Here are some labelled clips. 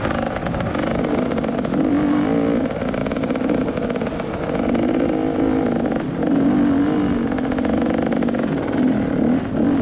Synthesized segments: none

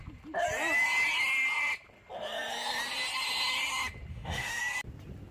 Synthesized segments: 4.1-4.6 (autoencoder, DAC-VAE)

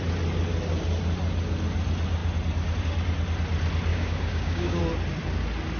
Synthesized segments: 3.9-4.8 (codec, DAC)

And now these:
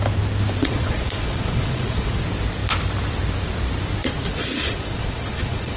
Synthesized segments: 0.6-2.2 (vocoder, Vocos); 4.0-5.8

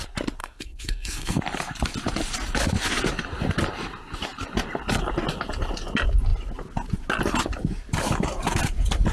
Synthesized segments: 0.4-1.4 (codec, SNAC)

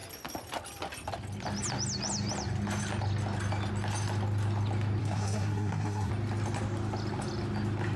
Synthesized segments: 5.0-6.1 (codec, SNAC)

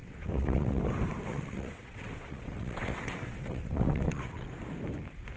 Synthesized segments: 0.0-0.8 (vocoder, WaveNeXt); 1.3-4.5

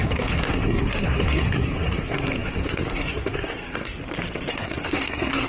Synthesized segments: 0.0-3.9 (codec, SNAC); 4.5-5.5